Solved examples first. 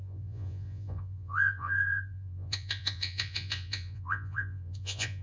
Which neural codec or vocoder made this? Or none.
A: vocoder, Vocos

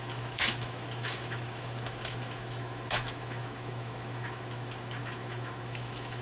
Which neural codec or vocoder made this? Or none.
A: autoencoder, DAC-VAE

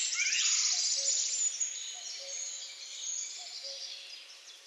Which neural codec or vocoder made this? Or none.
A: none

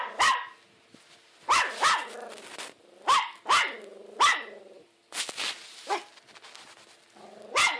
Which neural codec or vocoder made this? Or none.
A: none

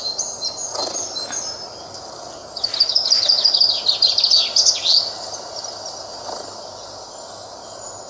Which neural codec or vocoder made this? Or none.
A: none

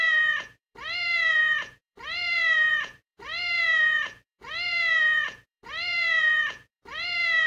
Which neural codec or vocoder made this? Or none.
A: vocoder, Vocos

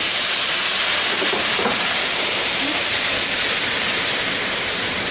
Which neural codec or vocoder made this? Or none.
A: vocoder, BigVGAN v2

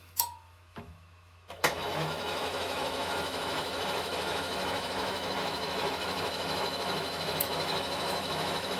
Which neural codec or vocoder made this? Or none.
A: autoencoder, DAC-VAE